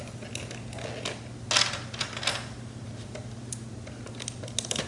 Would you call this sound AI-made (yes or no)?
no